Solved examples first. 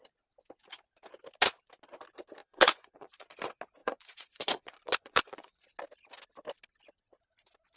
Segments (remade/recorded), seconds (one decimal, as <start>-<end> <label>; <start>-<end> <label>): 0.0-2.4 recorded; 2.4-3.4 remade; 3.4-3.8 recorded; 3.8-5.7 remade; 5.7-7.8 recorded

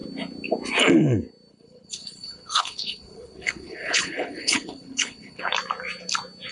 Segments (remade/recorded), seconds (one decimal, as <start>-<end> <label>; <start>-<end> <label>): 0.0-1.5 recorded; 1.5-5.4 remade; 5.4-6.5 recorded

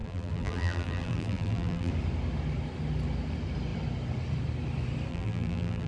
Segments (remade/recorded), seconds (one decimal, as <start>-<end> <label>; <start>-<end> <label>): 0.0-1.9 remade; 1.9-5.1 recorded; 5.1-5.9 remade